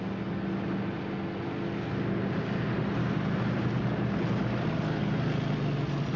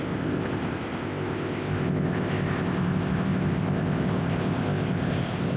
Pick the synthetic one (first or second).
second